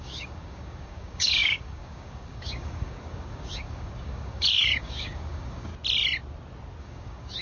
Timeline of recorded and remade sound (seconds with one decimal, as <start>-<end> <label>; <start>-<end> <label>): 0.0-5.7 remade; 5.7-6.8 recorded; 6.8-7.4 remade